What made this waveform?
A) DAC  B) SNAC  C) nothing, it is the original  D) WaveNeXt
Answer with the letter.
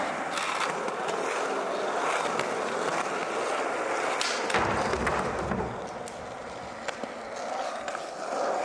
C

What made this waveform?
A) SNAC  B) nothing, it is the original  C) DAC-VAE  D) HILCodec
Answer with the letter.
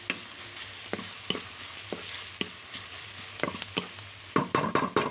B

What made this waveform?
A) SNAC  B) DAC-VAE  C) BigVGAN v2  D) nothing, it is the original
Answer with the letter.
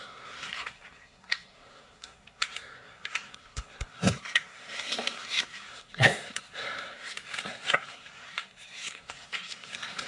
A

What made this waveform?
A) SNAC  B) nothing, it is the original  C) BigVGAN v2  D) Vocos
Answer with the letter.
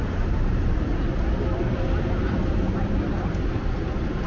B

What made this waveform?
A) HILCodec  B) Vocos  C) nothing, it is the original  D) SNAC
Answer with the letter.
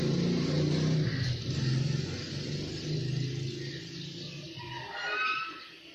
C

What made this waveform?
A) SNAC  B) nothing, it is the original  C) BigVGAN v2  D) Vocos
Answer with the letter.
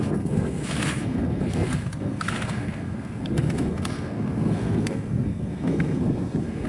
A